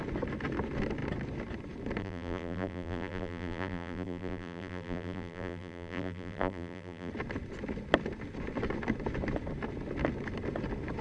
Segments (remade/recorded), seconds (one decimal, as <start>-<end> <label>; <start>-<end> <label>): 0.0-2.0 recorded; 2.0-7.1 remade; 7.1-11.0 recorded